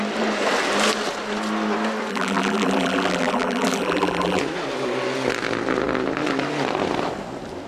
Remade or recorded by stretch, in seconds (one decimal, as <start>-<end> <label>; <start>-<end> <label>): 0.0-2.1 recorded; 2.1-4.4 remade; 4.4-7.7 recorded

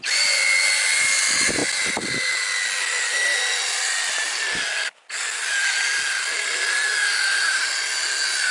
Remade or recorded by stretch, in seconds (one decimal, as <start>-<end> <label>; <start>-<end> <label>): 0.0-8.5 recorded